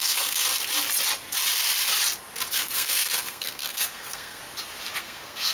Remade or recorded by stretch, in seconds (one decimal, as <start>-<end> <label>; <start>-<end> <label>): 0.0-0.5 remade; 0.5-2.5 recorded; 2.5-4.4 remade; 4.4-5.0 recorded; 5.0-5.5 remade